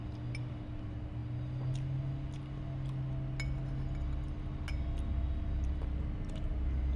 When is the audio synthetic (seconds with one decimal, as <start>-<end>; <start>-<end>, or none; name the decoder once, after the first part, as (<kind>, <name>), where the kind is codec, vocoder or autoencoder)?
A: none